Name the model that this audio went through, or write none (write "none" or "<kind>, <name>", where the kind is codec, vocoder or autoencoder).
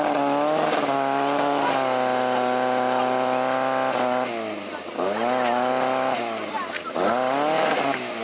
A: none